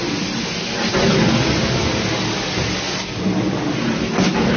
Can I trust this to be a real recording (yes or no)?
yes